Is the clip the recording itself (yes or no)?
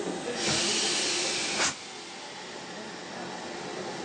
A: yes